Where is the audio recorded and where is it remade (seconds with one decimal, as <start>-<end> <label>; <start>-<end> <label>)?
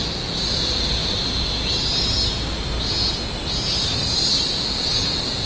0.0-5.5 recorded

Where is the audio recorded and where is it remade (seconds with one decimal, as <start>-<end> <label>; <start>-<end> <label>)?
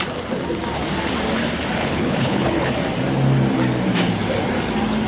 0.0-1.8 recorded; 1.8-2.7 remade; 2.7-5.1 recorded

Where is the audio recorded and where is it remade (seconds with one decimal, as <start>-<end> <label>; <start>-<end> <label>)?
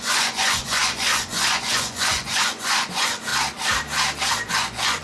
0.0-3.3 remade; 3.3-4.5 recorded; 4.5-5.0 remade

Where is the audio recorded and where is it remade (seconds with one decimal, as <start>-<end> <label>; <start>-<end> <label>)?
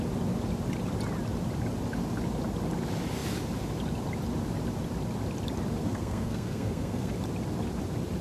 0.0-5.8 recorded; 5.8-7.1 remade; 7.1-8.2 recorded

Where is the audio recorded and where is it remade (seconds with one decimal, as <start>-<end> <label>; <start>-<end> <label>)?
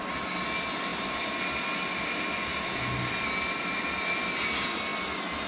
0.0-0.9 recorded; 0.9-1.4 remade; 1.4-5.5 recorded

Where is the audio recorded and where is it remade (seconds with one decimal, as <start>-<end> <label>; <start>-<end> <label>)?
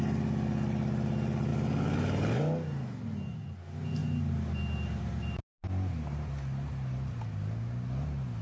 0.0-8.4 recorded